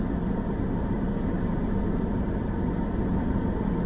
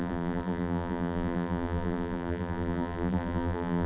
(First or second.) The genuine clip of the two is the first